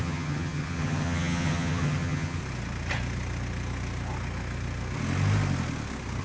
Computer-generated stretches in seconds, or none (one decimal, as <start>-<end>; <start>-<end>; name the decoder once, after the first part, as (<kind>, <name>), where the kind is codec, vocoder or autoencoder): 0.0-2.4 (vocoder, HiFi-GAN)